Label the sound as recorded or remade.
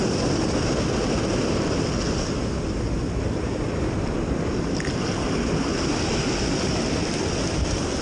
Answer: recorded